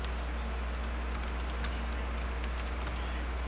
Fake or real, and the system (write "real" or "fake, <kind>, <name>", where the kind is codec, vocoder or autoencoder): real